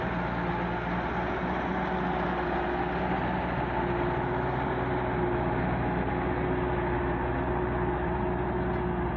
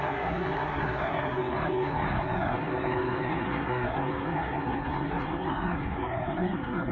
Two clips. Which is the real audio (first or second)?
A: first